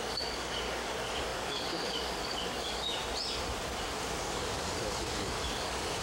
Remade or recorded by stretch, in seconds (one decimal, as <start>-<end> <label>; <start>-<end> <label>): 0.0-3.0 remade; 3.0-4.2 recorded; 4.2-6.0 remade